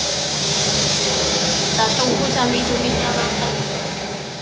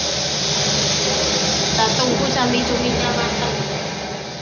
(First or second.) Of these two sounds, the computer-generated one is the first